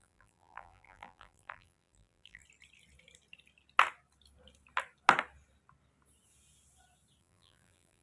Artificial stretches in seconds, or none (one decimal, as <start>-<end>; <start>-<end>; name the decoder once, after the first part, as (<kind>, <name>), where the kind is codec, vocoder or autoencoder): 0.0-2.4 (vocoder, BigVGAN v2); 7.2-8.0